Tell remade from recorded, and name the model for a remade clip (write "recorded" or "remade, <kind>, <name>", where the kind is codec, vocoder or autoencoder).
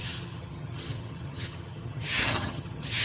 remade, vocoder, HiFi-GAN